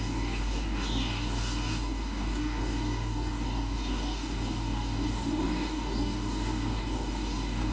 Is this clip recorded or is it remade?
remade